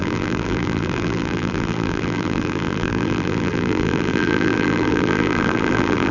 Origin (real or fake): fake